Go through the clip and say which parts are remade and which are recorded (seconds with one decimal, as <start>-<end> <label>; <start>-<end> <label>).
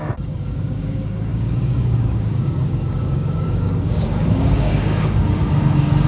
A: 0.0-6.1 remade